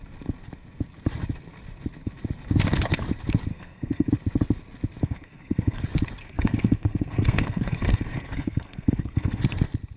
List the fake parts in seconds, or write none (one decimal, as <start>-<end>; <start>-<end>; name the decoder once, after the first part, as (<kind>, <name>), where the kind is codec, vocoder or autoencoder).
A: 3.5-4.1 (codec, SNAC); 5.0-5.8; 6.2-9.4